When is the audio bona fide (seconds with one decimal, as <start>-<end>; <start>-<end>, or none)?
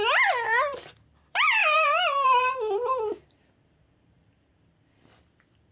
0.0-1.6; 4.6-5.7